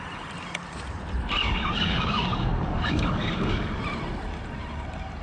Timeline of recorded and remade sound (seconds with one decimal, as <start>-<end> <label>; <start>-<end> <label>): 0.0-1.4 recorded; 1.4-3.8 remade; 3.8-5.2 recorded